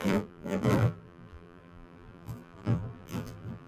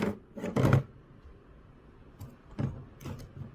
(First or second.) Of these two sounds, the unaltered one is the second